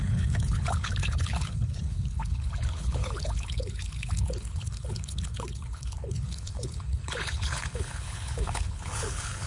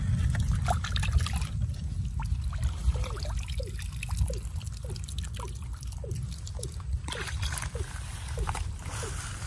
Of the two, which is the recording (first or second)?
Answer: second